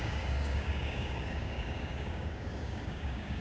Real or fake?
fake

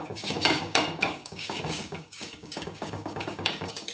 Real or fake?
fake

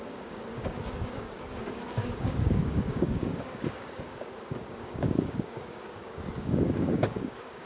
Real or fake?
fake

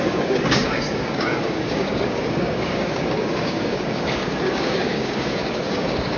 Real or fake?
fake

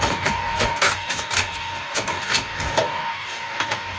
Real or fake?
fake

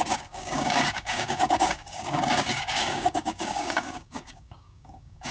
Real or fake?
fake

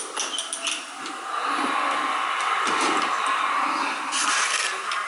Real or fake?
real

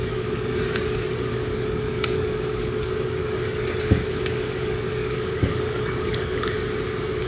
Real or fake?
fake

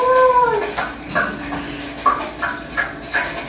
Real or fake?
real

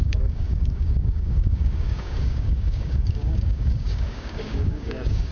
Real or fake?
fake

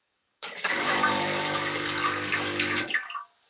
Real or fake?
fake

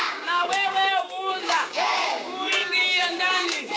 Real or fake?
fake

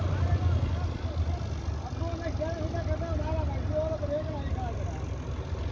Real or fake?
real